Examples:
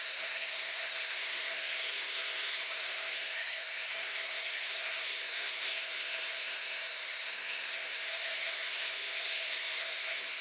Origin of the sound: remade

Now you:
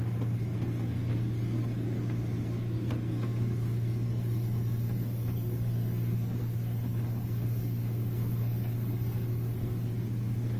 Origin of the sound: remade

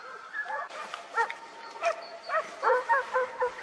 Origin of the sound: recorded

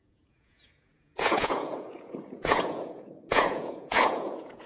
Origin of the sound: remade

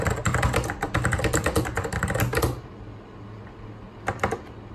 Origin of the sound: recorded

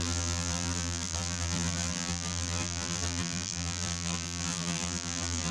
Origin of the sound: remade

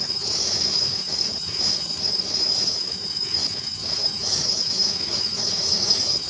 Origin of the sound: remade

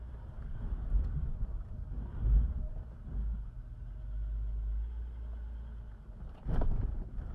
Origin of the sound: recorded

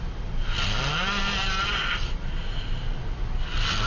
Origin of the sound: recorded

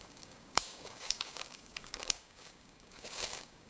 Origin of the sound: remade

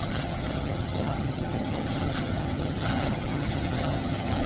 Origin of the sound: remade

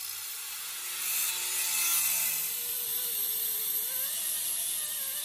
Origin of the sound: recorded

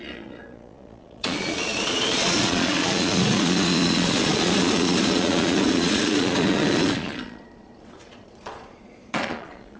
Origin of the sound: remade